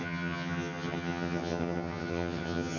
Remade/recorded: remade